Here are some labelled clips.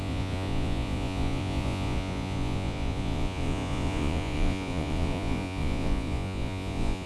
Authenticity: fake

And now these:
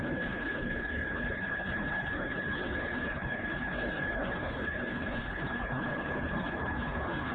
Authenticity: fake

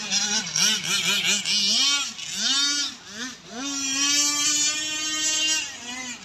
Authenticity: real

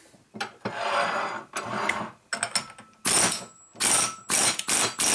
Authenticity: real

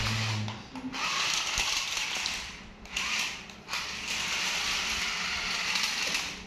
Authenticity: real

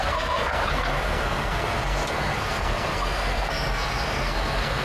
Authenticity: fake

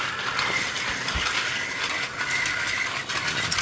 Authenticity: real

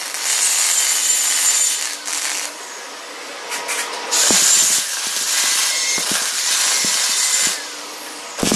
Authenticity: real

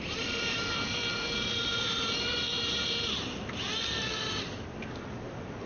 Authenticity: real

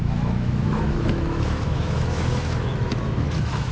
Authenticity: fake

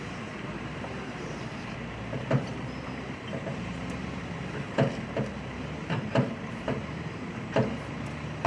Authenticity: fake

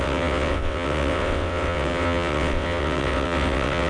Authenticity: fake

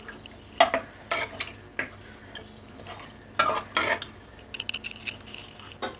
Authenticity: real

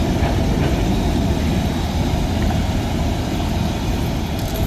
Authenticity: fake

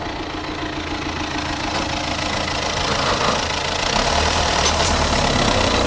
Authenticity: real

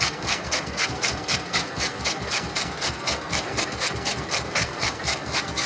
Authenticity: fake